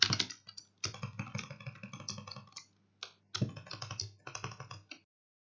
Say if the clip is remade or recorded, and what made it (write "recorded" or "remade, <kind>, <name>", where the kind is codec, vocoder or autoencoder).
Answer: recorded